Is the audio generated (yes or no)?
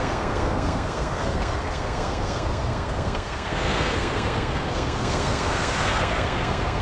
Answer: yes